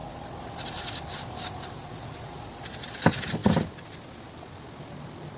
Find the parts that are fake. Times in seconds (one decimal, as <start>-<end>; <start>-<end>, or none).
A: 0.0-3.4; 5.0-5.4